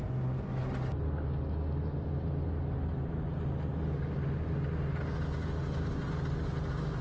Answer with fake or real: real